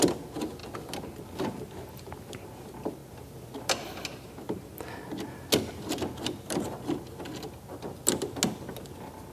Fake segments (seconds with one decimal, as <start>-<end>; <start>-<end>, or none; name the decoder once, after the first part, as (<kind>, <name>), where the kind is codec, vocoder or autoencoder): none